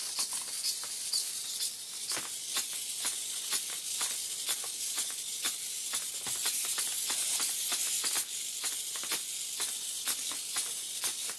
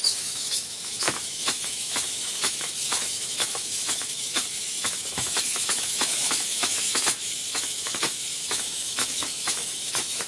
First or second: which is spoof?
second